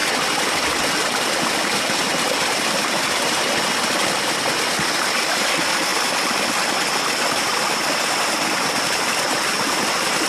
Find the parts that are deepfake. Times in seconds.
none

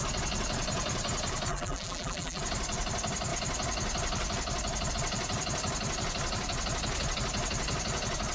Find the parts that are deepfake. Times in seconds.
1.5-2.4

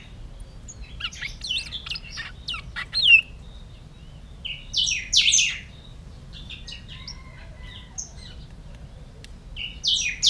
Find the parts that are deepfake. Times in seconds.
5.9-6.5